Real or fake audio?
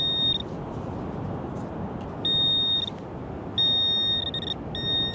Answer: real